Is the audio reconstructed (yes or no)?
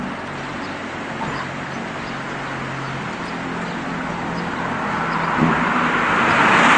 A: no